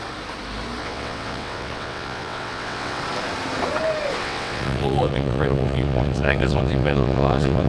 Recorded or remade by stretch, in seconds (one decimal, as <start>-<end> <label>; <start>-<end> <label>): 0.0-0.8 recorded; 0.8-3.0 remade; 3.0-4.2 recorded; 4.2-7.7 remade

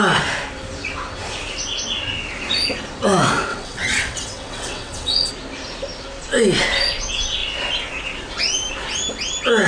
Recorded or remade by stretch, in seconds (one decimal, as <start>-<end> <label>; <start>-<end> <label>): 0.0-3.5 recorded; 3.5-5.3 remade; 5.3-9.7 recorded